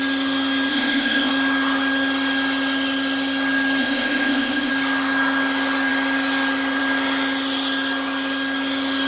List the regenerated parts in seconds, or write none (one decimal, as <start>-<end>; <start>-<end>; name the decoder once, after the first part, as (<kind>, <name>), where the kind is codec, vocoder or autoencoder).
0.7-1.3 (codec, ZipCodec); 3.8-4.7